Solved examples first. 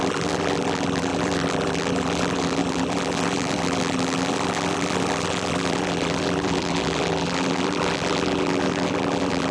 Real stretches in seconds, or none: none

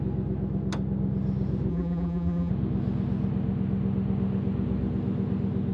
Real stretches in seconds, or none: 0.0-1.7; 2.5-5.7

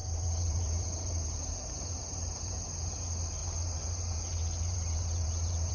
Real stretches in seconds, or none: 3.0-3.4

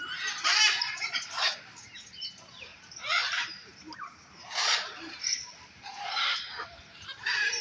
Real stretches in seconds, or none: none

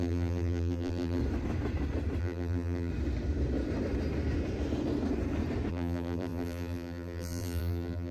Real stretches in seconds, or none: 1.2-2.2; 2.9-5.7